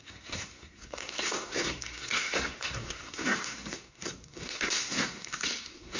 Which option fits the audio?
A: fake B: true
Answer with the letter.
A